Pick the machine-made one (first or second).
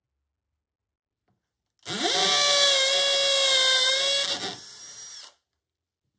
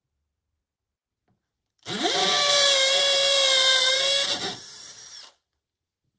second